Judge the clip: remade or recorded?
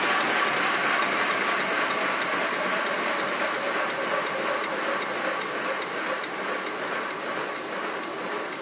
recorded